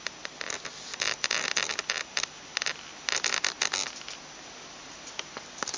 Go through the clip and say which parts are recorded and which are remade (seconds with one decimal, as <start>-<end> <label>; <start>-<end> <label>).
0.0-4.8 recorded; 4.8-5.8 remade